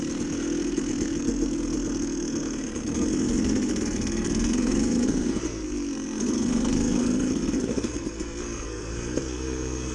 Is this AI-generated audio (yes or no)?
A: yes